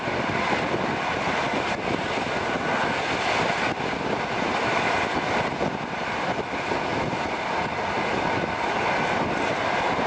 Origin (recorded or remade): recorded